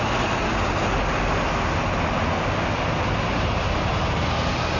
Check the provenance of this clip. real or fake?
real